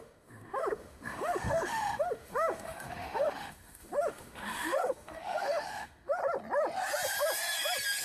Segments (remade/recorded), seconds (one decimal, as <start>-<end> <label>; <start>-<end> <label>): 0.0-6.2 remade; 6.2-8.0 recorded